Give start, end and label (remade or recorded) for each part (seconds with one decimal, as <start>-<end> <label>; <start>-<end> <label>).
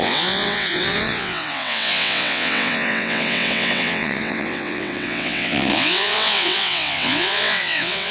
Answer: 0.0-8.1 remade